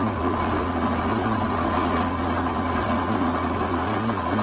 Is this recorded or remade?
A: remade